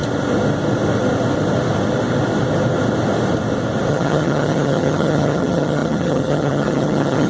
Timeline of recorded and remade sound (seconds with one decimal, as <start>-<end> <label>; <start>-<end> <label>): 0.0-3.9 recorded; 3.9-7.3 remade